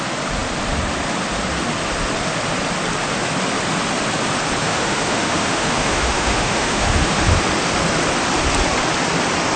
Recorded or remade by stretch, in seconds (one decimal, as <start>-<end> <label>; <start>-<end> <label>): 0.0-4.6 recorded; 4.6-7.2 remade; 7.2-9.6 recorded